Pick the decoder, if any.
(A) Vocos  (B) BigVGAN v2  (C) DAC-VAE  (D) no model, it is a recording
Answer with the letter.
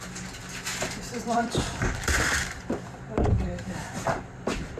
B